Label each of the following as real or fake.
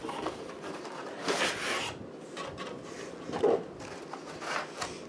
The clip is real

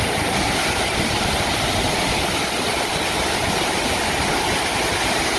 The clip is real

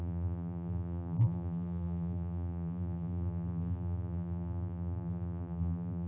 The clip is fake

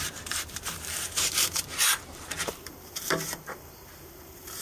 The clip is fake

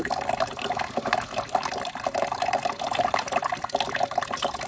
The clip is real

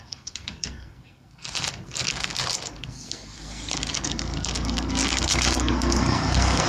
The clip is fake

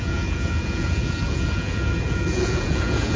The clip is fake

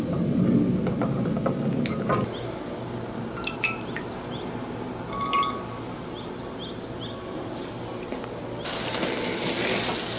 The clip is real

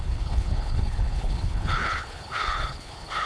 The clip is fake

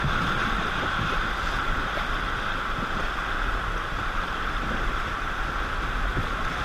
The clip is real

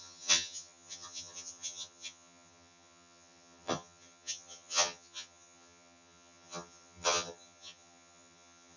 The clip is fake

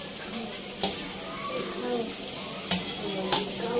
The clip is real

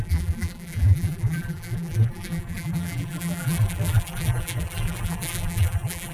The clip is fake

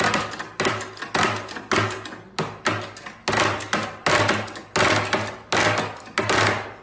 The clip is real